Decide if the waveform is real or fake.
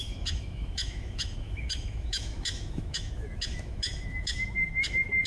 fake